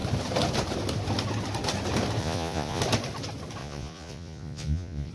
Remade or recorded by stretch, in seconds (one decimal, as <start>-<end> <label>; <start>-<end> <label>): 0.0-2.2 recorded; 2.2-2.8 remade; 2.8-3.6 recorded; 3.6-5.1 remade